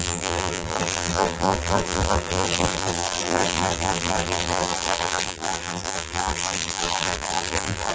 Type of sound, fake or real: fake